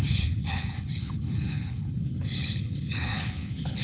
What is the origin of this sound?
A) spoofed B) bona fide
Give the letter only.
A